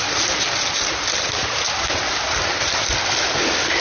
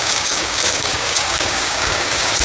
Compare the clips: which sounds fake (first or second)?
second